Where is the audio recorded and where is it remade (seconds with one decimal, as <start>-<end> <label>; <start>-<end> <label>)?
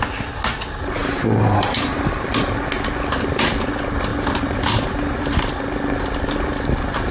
0.0-1.0 recorded; 1.0-2.2 remade; 2.2-4.1 recorded; 4.1-5.4 remade; 5.4-7.1 recorded